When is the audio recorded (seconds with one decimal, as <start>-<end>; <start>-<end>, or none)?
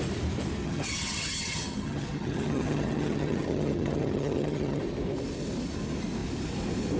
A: 0.0-0.6; 4.8-7.0